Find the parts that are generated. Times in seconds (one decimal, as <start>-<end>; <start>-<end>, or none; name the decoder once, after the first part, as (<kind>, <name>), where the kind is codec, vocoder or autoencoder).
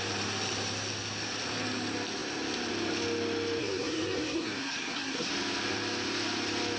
3.6-5.3 (codec, SNAC)